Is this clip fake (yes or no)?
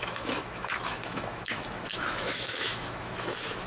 yes